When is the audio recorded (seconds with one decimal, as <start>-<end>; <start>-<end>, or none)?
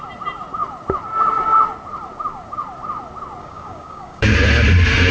0.0-3.4; 4.3-5.1